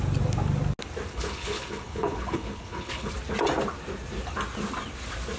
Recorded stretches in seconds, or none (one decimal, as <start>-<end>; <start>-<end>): 0.0-1.1; 3.1-5.4